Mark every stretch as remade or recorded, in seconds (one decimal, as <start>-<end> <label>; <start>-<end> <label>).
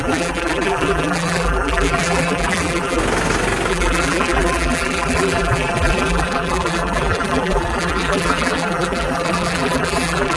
0.0-3.0 remade; 3.0-3.7 recorded; 3.7-10.4 remade